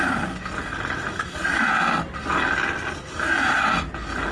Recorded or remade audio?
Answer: recorded